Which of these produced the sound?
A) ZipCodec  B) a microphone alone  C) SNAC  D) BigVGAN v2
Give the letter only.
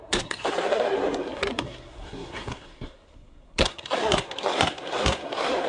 C